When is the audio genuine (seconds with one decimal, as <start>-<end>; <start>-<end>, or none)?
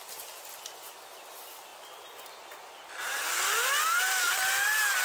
0.0-5.0